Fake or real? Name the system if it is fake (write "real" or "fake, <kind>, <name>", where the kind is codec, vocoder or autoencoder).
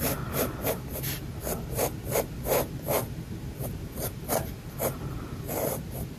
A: real